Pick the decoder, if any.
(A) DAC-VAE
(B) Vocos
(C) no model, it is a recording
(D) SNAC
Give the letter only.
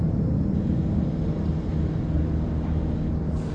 C